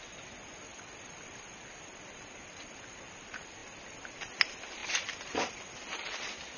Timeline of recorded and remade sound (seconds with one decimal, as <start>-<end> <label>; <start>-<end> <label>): 0.0-6.6 recorded